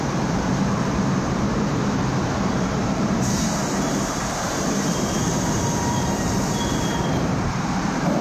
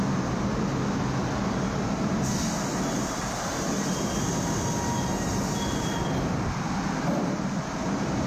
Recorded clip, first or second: second